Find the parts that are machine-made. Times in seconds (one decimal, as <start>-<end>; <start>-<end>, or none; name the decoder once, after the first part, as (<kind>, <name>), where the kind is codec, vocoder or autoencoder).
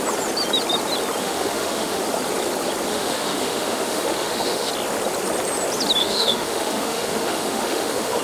1.2-2.0 (autoencoder, DAC-VAE); 2.9-4.7; 6.0-8.2